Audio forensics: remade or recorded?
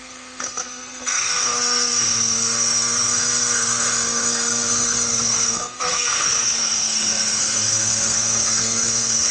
remade